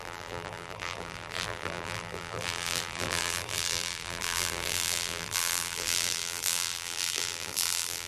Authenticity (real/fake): fake